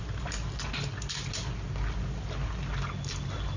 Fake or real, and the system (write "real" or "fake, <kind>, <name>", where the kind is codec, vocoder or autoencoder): real